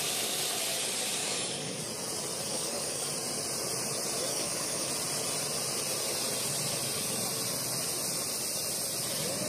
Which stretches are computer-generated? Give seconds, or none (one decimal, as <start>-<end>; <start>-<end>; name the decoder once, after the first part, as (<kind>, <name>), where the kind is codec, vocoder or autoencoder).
1.2-1.8 (codec, DAC); 2.5-3.1; 4.3-4.9